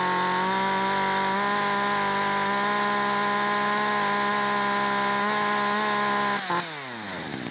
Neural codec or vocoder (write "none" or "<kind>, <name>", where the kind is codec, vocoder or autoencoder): none